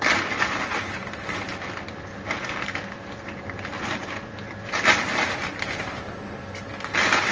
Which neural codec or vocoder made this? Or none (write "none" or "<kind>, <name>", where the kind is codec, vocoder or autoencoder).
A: none